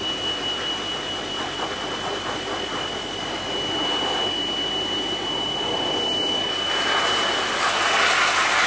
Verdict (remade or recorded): recorded